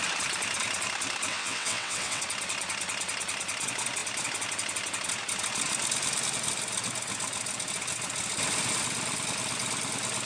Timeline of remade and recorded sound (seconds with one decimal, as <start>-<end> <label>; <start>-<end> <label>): 0.0-1.3 recorded; 1.3-2.2 remade; 2.2-10.3 recorded